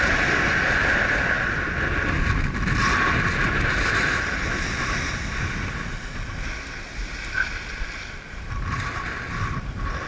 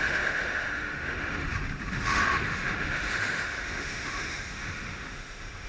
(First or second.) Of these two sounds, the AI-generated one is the second